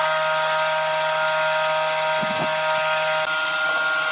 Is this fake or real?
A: real